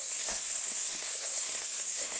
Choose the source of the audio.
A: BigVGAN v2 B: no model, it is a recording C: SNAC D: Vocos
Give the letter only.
C